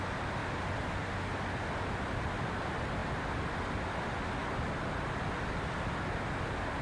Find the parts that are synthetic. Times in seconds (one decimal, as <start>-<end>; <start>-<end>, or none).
0.4-0.9; 4.4-5.5

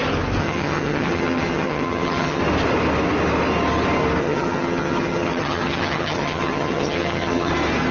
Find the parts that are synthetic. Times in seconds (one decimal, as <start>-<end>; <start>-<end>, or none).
0.4-2.4; 4.2-7.5

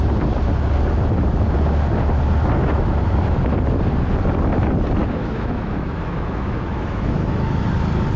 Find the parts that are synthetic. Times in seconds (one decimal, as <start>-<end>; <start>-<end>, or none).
2.6-3.4; 5.0-7.6